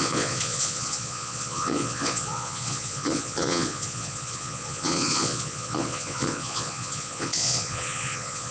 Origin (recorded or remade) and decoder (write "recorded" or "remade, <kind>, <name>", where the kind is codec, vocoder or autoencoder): remade, vocoder, Vocos